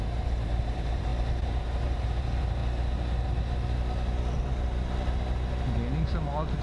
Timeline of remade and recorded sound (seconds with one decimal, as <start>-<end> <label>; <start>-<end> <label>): 0.0-1.1 remade; 1.1-1.6 recorded; 1.6-2.6 remade; 2.6-6.6 recorded